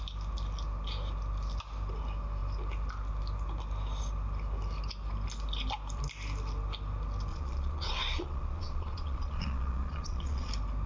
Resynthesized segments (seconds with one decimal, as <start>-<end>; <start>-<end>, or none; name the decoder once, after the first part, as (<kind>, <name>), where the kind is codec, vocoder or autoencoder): 7.3-10.5 (vocoder, Vocos)